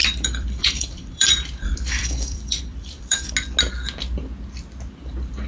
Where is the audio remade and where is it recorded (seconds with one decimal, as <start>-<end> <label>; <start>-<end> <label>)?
0.0-3.3 remade; 3.3-5.5 recorded